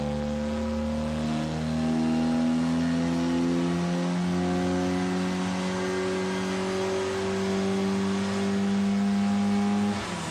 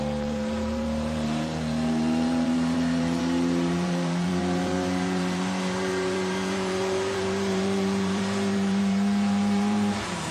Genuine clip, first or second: first